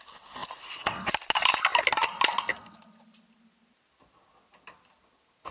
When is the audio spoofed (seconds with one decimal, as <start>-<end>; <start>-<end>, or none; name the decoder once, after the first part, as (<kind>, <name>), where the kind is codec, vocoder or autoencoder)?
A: none